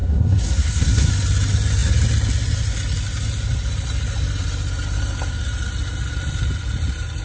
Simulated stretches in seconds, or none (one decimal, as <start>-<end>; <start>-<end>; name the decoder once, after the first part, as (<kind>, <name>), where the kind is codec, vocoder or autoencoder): 0.0-1.1 (codec, SNAC)